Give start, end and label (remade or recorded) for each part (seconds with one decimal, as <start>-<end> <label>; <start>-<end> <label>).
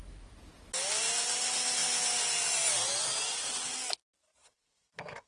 0.0-4.4 recorded; 4.4-5.3 remade